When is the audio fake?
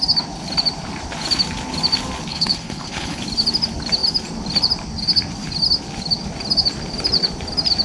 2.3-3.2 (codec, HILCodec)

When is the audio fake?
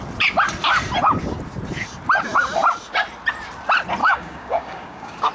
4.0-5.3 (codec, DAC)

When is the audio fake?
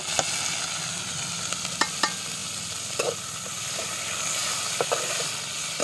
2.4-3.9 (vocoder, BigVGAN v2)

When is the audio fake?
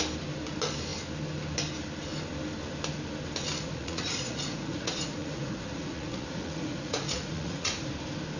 3.6-7.9 (vocoder, Vocos)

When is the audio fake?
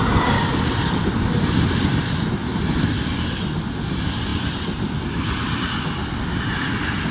0.0-7.1 (vocoder, BigVGAN v2)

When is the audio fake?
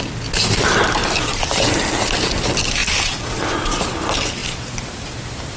1.0-1.5 (vocoder, BigVGAN v2); 2.8-3.4